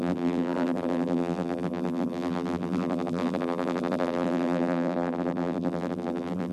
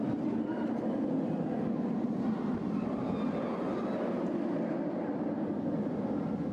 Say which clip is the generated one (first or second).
first